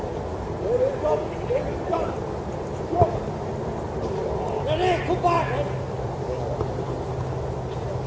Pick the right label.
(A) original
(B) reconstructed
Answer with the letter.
A